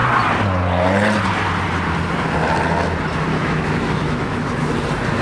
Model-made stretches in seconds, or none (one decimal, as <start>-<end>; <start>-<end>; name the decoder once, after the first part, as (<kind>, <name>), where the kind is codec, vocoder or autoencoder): 3.3-4.7 (autoencoder, DAC-VAE)